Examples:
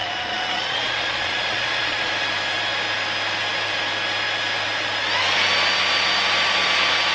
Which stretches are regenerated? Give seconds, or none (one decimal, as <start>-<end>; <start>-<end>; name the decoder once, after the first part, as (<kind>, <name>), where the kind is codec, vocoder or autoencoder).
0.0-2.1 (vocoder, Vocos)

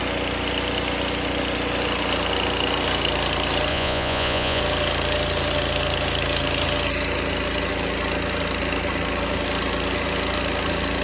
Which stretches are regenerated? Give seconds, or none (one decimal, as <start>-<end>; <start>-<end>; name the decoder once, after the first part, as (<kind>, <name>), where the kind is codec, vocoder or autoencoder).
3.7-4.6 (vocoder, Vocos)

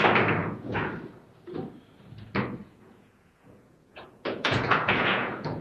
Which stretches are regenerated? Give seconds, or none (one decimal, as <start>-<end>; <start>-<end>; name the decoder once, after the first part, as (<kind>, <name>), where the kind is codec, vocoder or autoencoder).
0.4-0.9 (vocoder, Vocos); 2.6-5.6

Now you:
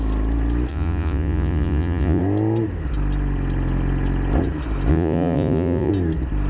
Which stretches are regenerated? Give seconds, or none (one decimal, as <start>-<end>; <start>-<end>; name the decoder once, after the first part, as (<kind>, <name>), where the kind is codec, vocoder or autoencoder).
0.7-2.2 (vocoder, Vocos); 4.9-5.9

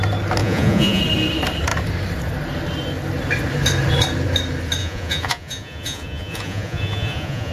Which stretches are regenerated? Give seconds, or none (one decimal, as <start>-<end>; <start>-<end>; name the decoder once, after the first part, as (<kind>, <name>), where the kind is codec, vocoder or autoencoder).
0.4-1.0 (vocoder, Vocos); 4.8-7.5

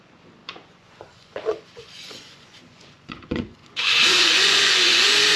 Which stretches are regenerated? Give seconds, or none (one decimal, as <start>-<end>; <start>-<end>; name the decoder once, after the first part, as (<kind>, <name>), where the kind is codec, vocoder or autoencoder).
0.0-5.4 (vocoder, Vocos)

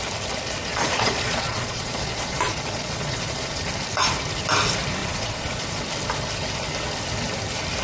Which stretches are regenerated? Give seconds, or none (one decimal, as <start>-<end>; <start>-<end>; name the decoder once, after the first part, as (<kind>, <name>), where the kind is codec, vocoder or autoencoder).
0.7-3.6 (vocoder, Vocos); 5.0-5.8

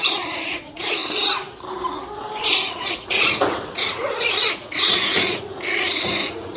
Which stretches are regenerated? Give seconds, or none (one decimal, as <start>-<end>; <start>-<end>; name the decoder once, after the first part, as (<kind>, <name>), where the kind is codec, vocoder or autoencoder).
0.0-1.0 (vocoder, Vocos); 2.7-6.6